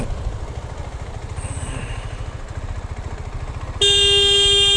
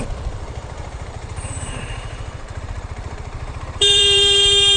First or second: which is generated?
second